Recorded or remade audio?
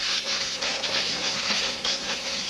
remade